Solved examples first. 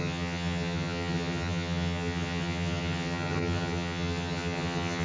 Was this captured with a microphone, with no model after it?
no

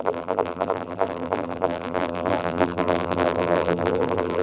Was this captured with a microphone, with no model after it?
no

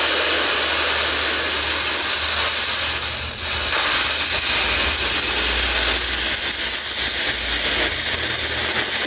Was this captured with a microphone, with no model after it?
yes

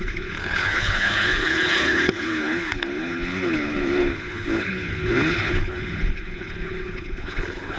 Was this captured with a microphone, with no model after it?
no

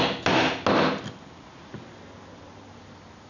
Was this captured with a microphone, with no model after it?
yes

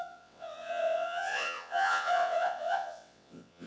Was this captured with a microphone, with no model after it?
no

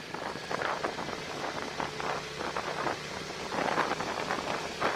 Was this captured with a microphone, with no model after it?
yes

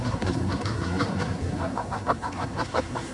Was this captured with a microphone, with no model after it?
no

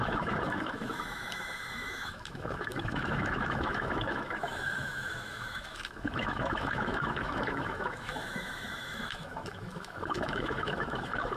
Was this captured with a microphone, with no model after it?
no